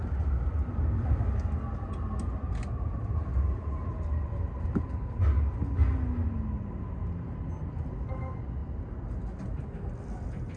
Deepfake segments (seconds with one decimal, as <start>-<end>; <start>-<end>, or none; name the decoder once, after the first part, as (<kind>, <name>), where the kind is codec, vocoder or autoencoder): none